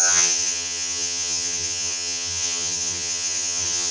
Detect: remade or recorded remade